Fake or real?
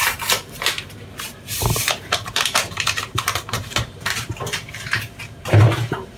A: fake